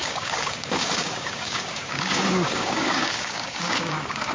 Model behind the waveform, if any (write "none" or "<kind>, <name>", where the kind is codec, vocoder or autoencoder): codec, DAC